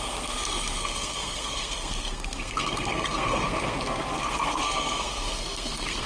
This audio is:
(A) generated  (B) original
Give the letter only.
A